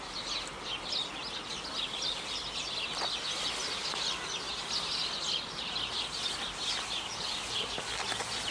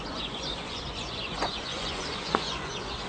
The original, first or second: first